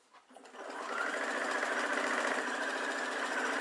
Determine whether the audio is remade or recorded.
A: recorded